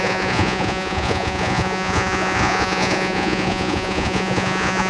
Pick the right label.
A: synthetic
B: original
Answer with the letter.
A